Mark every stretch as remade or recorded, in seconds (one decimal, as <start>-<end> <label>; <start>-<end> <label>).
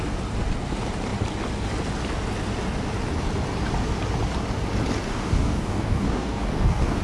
0.0-5.1 recorded; 5.1-7.0 remade